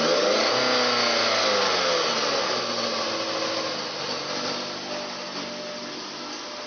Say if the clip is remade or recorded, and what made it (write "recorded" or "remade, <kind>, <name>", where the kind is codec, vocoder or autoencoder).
recorded